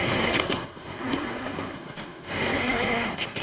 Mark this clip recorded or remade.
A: remade